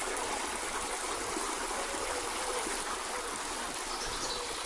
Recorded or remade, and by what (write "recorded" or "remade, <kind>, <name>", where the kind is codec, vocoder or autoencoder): recorded